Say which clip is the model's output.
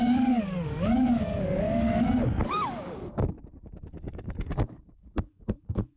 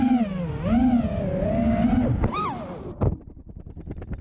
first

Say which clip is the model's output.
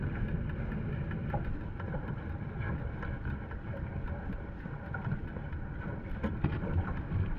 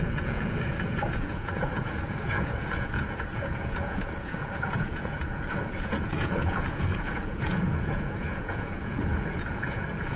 second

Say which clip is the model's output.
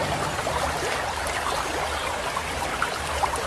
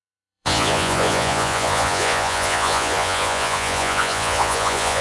second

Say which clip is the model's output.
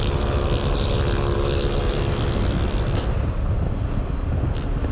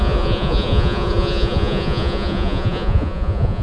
second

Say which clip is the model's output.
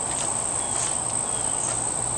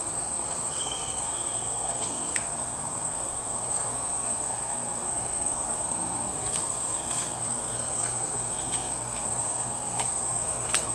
second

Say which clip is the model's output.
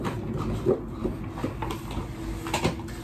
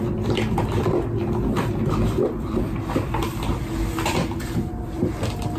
second